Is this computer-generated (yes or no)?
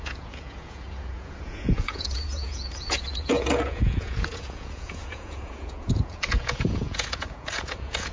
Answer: yes